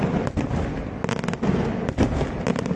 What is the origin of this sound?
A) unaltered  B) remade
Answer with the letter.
A